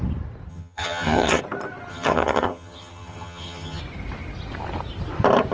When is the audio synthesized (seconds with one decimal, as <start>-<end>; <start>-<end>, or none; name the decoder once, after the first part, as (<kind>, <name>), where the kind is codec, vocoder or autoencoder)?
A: 0.5-1.4 (vocoder, HiFi-GAN); 1.9-3.8